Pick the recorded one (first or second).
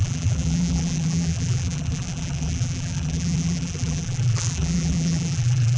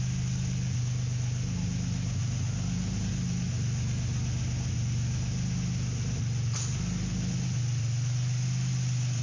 second